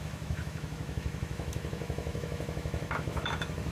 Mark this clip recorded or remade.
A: remade